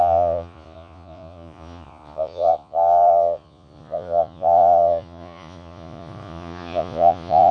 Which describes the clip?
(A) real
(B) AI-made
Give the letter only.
B